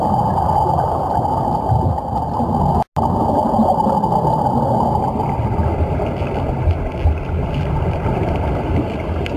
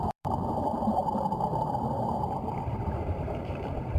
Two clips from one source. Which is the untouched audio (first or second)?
first